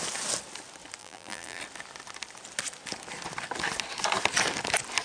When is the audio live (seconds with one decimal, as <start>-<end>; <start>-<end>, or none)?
0.0-1.0; 1.6-5.0